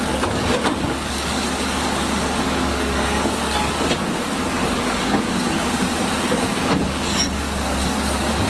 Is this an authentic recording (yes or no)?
no